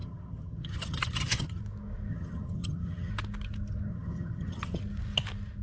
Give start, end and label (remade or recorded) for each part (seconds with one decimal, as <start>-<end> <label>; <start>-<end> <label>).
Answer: 0.0-1.6 remade; 1.6-2.1 recorded; 2.1-3.1 remade; 3.1-3.9 recorded; 3.9-4.8 remade; 4.8-5.6 recorded